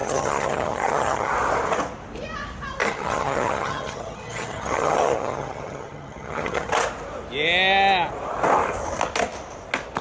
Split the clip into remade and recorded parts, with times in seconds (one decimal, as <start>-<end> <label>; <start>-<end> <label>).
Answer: 0.0-1.3 remade; 1.3-2.8 recorded; 2.8-6.7 remade; 6.7-10.0 recorded